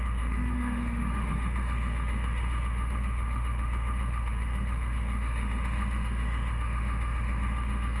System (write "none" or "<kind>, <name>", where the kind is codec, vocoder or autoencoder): autoencoder, DAC-VAE